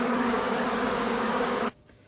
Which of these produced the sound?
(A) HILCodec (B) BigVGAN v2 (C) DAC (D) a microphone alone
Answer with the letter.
C